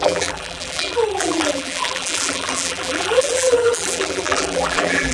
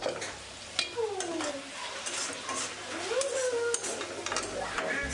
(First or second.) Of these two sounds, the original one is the second